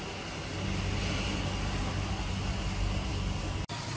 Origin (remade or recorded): recorded